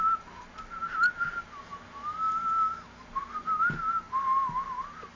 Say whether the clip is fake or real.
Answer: real